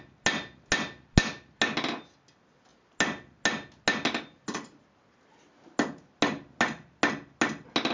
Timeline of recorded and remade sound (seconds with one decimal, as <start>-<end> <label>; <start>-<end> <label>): 0.0-7.9 recorded